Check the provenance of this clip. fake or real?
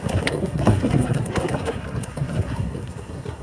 fake